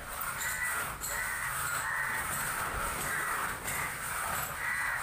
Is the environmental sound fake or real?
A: real